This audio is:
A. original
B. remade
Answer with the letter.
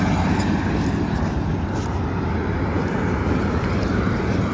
A